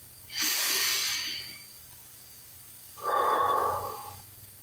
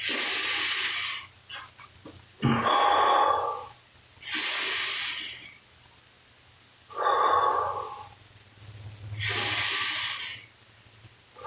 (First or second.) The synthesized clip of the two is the first